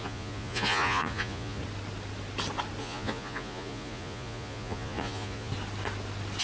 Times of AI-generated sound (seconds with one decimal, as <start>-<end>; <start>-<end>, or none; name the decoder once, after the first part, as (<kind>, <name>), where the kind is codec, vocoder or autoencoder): 0.0-1.6 (vocoder, Vocos); 2.8-5.5